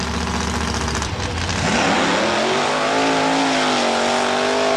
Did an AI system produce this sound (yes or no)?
no